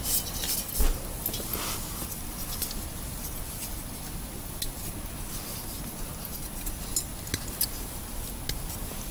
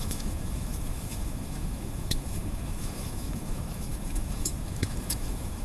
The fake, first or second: second